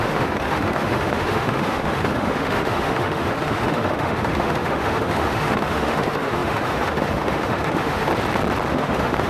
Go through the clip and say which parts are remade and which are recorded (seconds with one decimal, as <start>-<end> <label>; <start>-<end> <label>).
0.0-8.1 remade; 8.1-8.7 recorded; 8.7-9.3 remade